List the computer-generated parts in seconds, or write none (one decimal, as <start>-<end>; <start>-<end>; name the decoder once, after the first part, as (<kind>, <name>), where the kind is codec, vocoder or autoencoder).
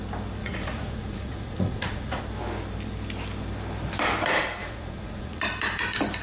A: 0.4-2.2 (vocoder, Vocos); 4.6-5.4